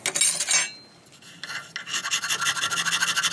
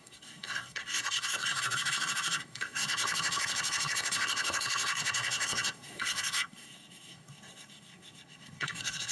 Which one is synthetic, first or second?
second